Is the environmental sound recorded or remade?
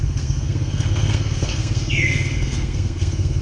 remade